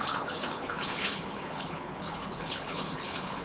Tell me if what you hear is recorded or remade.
remade